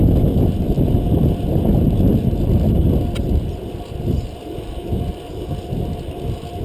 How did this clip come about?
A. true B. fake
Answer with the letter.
A